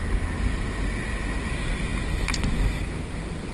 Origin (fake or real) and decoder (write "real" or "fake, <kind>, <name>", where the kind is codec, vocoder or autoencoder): real